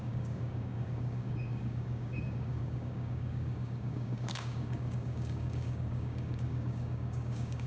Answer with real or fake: fake